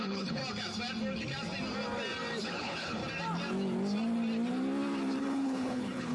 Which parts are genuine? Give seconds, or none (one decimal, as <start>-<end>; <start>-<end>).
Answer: 0.4-2.4; 3.0-5.2